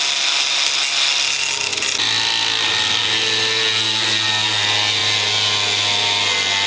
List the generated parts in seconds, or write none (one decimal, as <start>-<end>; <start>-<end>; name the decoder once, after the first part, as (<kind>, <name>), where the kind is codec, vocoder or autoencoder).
none